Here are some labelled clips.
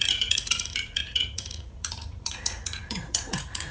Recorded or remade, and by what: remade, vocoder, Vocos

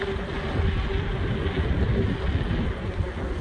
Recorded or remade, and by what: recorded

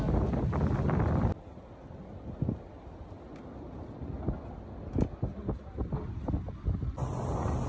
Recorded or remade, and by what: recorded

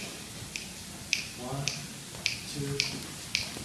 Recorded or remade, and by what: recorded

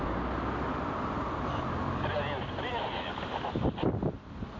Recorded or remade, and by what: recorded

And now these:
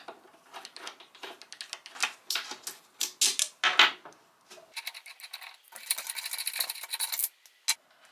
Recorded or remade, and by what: recorded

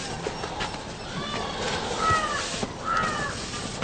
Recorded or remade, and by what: recorded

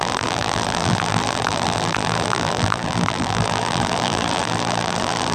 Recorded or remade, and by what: remade, vocoder, BigVGAN v2